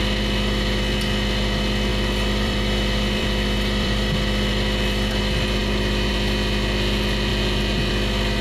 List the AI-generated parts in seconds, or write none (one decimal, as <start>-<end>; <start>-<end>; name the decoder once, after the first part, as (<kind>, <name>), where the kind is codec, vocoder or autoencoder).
1.9-5.1 (vocoder, BigVGAN v2); 5.6-6.1